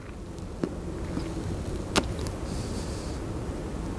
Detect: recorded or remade recorded